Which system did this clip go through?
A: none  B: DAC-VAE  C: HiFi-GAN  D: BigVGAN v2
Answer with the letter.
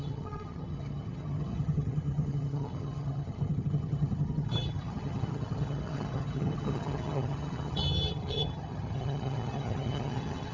C